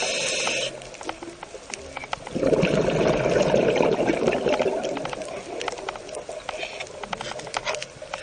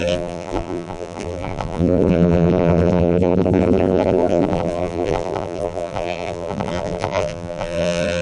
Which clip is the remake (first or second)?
second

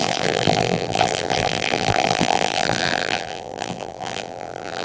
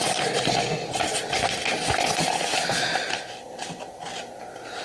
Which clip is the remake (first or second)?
first